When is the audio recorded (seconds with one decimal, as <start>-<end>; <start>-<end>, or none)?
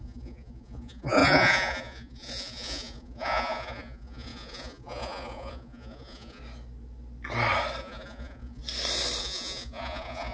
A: 6.4-7.8; 8.6-9.2